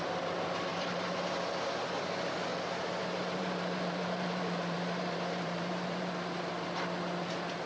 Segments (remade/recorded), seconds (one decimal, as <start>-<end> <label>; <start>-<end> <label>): 0.0-0.7 recorded; 0.7-1.2 remade; 1.2-2.5 recorded; 2.5-6.1 remade; 6.1-7.7 recorded